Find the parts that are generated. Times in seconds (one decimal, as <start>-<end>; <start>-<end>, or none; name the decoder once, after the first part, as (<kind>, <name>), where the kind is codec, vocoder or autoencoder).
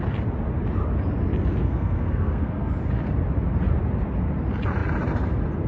1.6-2.8 (codec, SNAC)